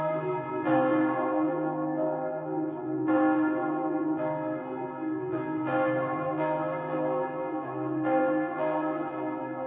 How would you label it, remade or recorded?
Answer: remade